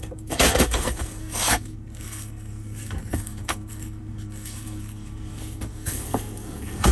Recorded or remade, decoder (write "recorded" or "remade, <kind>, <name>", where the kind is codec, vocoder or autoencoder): remade, codec, SNAC